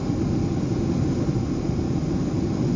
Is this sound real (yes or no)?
yes